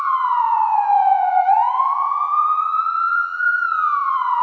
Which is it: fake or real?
fake